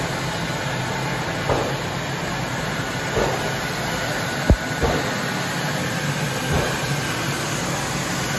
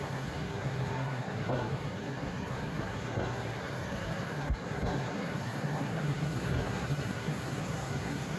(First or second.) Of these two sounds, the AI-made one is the second